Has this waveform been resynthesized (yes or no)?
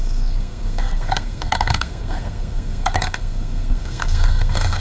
yes